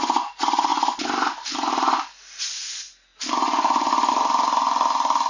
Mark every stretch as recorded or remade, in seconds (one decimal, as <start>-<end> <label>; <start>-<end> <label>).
0.0-5.3 recorded